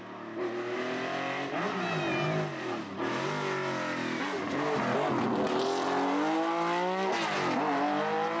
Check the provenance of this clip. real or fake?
real